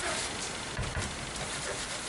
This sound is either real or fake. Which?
real